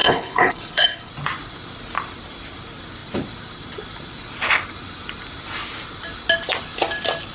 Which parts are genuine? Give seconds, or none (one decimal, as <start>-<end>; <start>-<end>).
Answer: 1.1-7.3